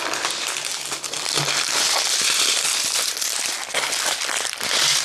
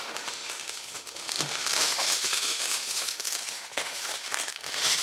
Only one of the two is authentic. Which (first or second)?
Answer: first